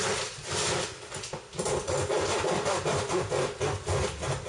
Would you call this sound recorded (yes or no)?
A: yes